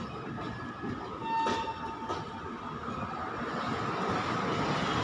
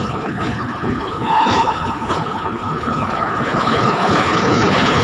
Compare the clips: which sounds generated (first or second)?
second